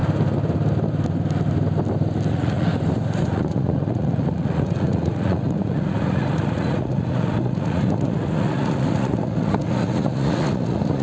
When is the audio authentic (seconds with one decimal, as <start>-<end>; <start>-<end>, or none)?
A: 0.0-2.3; 2.7-3.2